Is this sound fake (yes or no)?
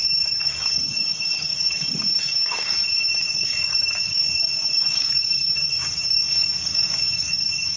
yes